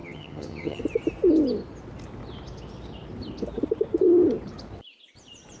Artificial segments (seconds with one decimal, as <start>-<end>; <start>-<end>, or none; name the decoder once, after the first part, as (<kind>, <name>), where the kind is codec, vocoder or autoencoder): 0.0-0.8 (vocoder, HiFi-GAN)